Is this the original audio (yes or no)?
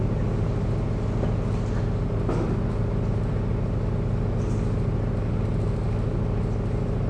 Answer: yes